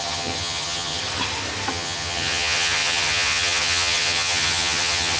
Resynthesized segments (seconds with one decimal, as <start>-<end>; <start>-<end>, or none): 0.0-1.0; 1.7-5.2